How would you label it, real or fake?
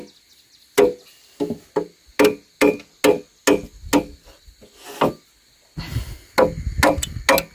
real